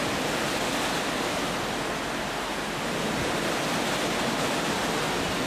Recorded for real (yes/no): yes